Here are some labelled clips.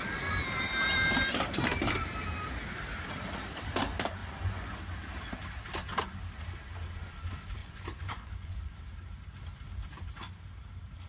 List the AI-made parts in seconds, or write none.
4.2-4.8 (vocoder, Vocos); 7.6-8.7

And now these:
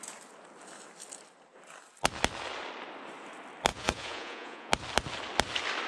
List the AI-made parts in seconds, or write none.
3.7-4.7 (vocoder, Vocos)

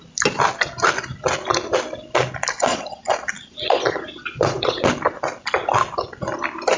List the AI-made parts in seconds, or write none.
2.7-4.8 (vocoder, Vocos)

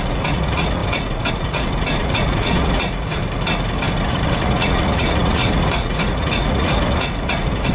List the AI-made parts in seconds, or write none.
0.0-3.2 (vocoder, Vocos); 4.0-7.7

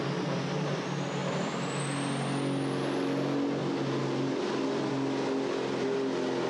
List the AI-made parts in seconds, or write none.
none

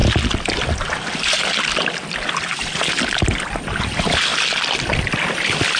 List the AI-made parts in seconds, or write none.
none

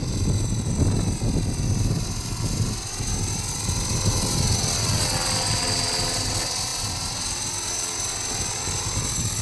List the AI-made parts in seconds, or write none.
none